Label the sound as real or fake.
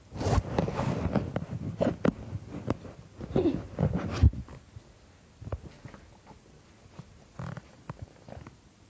real